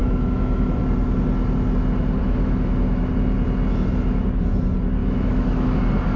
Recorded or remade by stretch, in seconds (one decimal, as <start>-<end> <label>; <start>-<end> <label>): 0.0-0.8 remade; 0.8-2.2 recorded; 2.2-3.1 remade; 3.1-5.0 recorded; 5.0-5.8 remade; 5.8-6.2 recorded